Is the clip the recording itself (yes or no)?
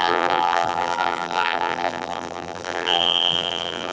no